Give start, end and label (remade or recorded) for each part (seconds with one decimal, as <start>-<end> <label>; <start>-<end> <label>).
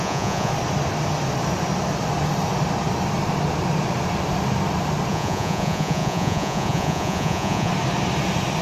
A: 0.0-0.5 remade; 0.5-5.1 recorded; 5.1-7.7 remade; 7.7-8.6 recorded